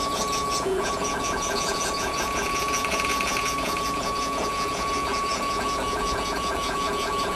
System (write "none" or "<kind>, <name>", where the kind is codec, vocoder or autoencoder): vocoder, Vocos